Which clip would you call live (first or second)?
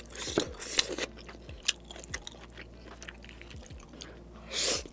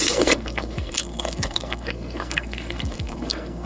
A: first